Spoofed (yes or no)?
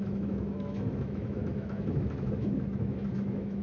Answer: yes